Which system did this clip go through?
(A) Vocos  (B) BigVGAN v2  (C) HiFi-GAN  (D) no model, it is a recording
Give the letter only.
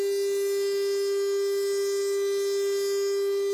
D